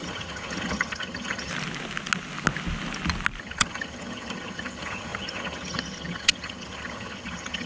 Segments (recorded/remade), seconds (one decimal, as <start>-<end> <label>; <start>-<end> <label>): 0.0-1.5 remade; 1.5-3.4 recorded; 3.4-7.7 remade